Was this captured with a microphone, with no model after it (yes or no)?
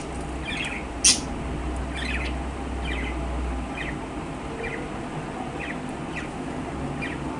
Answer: yes